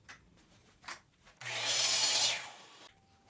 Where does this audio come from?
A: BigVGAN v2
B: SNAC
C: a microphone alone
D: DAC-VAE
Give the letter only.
A